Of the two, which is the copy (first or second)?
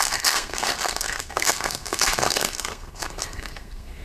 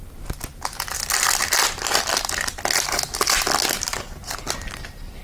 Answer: first